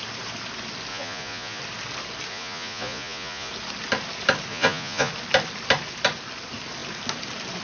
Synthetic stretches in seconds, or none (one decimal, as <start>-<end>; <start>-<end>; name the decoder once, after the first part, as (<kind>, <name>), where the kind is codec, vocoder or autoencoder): 0.9-1.6 (vocoder, Vocos); 2.3-3.5; 4.5-5.1